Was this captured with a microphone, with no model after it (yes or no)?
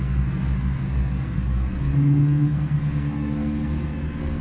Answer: no